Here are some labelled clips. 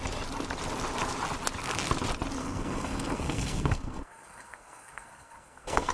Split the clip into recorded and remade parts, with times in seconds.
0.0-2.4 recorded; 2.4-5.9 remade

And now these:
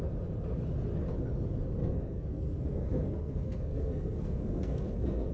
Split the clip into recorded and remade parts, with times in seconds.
0.0-1.8 recorded; 1.8-5.3 remade